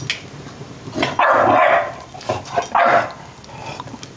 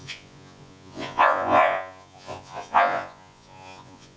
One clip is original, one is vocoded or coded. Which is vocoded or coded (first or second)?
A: second